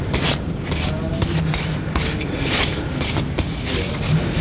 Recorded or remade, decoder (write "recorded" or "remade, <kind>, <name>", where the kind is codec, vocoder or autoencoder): recorded